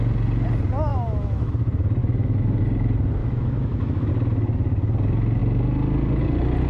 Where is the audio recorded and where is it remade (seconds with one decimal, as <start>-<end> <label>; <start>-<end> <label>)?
0.0-0.9 recorded; 0.9-1.5 remade; 1.5-2.0 recorded; 2.0-2.6 remade; 2.6-3.2 recorded; 3.2-4.1 remade; 4.1-6.7 recorded